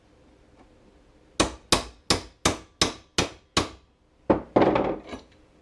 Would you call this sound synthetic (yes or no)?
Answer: no